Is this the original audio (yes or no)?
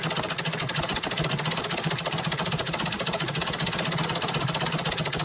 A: yes